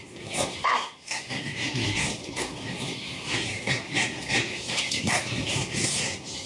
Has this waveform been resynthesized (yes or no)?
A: yes